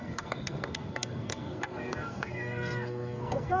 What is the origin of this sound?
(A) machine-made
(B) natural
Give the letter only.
A